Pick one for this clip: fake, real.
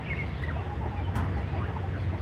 real